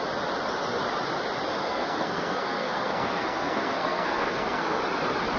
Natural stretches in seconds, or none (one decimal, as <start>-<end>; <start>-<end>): 0.0-1.6; 4.8-5.4